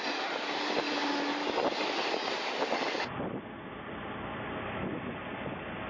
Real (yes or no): yes